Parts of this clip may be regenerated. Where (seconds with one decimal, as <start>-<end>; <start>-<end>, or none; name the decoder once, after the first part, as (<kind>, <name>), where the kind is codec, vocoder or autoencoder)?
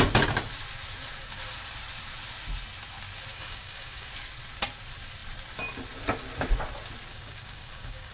3.3-4.1 (codec, DAC); 7.1-8.1